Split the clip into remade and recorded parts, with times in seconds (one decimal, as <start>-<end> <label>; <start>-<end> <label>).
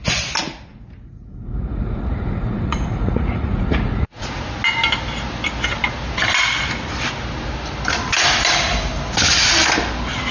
0.0-0.7 recorded; 0.7-4.4 remade; 4.4-10.3 recorded